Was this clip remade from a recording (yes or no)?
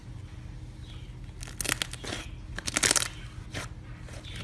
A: no